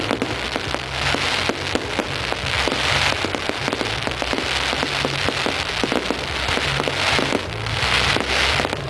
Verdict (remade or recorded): recorded